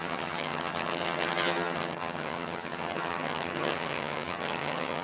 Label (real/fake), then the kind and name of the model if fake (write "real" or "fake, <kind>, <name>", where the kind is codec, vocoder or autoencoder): fake, vocoder, HiFi-GAN